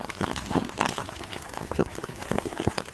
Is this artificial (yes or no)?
yes